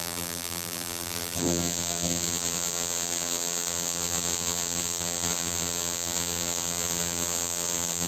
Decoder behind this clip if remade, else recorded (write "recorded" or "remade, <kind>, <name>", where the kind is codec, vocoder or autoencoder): remade, vocoder, BigVGAN v2